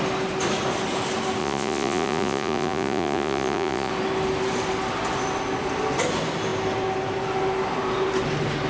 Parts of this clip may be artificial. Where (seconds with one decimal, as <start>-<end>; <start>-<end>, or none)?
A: 1.4-3.9

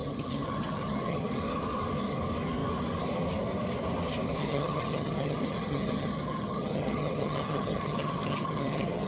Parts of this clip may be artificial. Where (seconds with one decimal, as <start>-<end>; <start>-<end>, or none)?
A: 0.0-1.4; 4.4-9.1

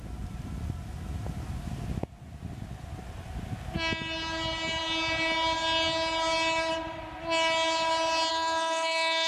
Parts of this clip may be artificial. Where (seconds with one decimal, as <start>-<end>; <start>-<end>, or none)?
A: 8.3-9.3

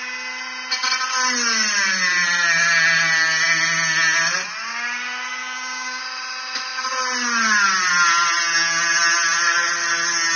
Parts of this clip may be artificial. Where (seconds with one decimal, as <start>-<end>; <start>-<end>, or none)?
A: 5.4-6.0

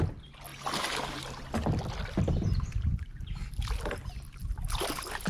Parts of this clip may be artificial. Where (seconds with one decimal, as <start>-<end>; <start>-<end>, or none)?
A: none

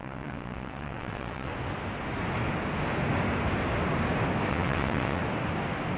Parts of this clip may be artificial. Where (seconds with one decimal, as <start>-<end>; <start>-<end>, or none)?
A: 0.0-1.5; 4.5-5.2

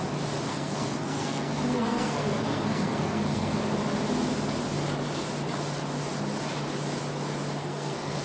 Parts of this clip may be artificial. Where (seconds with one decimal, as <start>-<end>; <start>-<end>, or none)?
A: 0.5-3.6; 7.6-8.2

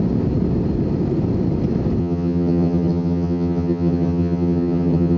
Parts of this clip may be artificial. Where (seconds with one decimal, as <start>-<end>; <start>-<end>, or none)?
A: 2.0-5.2